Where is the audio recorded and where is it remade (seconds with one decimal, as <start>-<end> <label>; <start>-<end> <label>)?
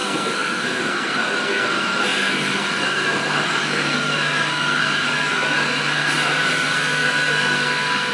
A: 0.0-8.1 remade